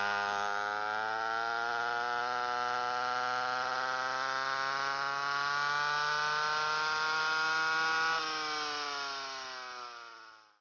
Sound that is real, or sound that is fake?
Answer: real